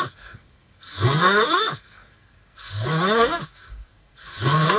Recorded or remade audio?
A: remade